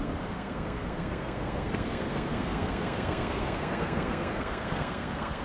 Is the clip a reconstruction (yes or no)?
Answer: yes